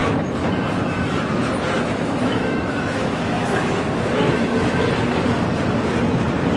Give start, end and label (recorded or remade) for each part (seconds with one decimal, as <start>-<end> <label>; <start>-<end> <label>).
0.0-2.2 recorded; 2.2-4.9 remade; 4.9-6.6 recorded

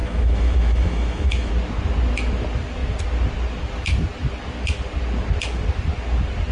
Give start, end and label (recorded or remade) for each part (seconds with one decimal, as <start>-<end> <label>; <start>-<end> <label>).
0.0-1.5 remade; 1.5-6.5 recorded

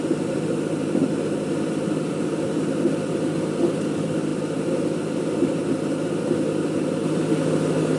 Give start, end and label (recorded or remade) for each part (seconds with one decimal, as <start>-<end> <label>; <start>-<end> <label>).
0.0-8.0 recorded

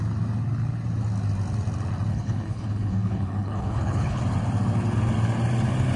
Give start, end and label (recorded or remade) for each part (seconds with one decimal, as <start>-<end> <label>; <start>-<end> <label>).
0.0-2.1 recorded; 2.1-4.2 remade; 4.2-6.0 recorded